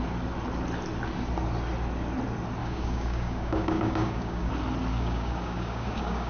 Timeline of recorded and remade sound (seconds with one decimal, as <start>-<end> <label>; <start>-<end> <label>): 0.0-2.6 recorded; 2.6-4.5 remade; 4.5-4.9 recorded; 4.9-6.3 remade